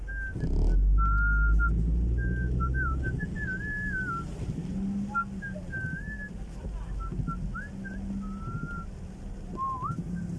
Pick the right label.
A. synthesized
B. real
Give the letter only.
B